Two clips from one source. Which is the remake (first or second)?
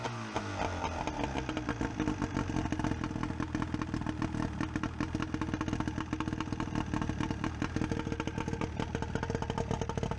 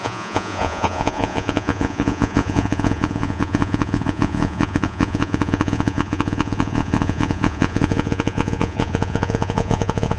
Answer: second